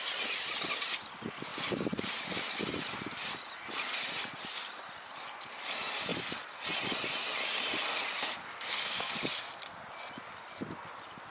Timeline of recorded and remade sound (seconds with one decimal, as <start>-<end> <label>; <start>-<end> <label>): 0.0-8.4 recorded; 8.4-9.1 remade; 9.1-11.3 recorded